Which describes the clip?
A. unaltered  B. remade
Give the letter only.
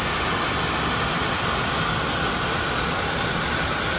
A